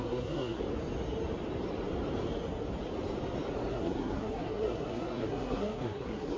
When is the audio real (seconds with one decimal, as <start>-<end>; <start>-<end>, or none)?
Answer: 0.6-3.7